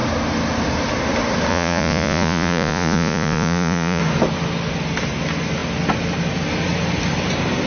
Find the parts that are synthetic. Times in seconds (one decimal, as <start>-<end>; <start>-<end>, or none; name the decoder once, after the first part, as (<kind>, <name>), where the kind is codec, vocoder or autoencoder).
1.5-4.0 (vocoder, Vocos)

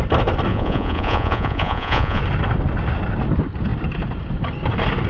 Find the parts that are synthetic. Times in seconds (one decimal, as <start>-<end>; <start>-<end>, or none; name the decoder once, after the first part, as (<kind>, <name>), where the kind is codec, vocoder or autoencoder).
0.5-2.2 (vocoder, Vocos)

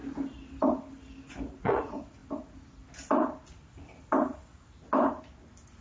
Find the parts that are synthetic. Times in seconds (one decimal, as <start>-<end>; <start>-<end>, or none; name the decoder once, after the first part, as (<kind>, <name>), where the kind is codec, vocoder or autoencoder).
1.6-2.2 (vocoder, Vocos)

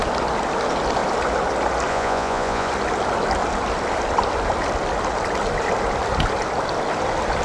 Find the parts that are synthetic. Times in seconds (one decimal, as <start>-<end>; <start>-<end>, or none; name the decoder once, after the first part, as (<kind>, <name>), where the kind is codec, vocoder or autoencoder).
1.9-2.7 (vocoder, Vocos)

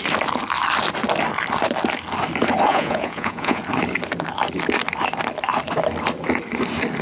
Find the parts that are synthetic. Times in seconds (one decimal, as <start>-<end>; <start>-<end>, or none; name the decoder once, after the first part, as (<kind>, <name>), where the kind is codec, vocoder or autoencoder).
2.7-3.6 (vocoder, Vocos)

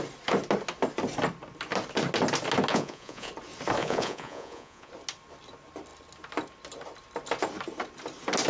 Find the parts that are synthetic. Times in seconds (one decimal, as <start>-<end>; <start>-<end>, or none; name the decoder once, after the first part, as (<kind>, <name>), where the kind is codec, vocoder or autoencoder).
2.7-3.3 (vocoder, Vocos); 3.8-4.9

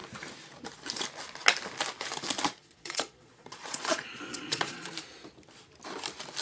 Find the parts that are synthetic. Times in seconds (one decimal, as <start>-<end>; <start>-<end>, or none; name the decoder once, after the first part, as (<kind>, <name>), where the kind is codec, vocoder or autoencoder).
2.6-4.9 (vocoder, Vocos)